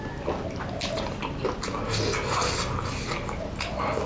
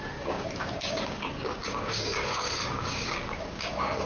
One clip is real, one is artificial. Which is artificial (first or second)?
second